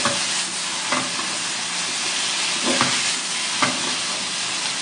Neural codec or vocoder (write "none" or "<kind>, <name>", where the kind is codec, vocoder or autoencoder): none